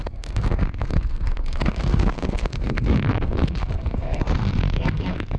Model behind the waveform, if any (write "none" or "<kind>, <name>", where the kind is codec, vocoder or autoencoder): codec, SNAC